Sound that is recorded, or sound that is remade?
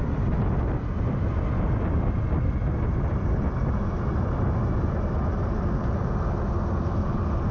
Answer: recorded